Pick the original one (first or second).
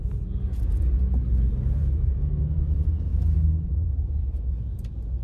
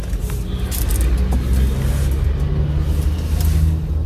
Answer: second